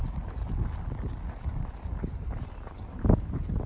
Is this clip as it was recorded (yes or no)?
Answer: yes